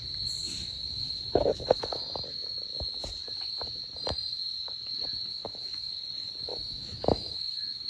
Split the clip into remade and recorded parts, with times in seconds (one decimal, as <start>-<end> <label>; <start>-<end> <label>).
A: 0.0-0.4 recorded; 0.4-2.0 remade; 2.0-5.3 recorded; 5.3-5.9 remade; 5.9-6.5 recorded; 6.5-7.9 remade